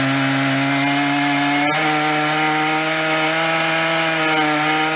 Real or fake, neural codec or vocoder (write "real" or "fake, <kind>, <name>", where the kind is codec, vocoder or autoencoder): real